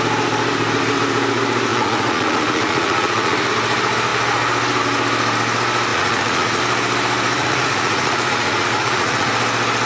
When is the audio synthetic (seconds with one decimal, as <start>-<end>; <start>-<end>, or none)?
1.7-3.5; 5.9-6.6; 7.4-9.3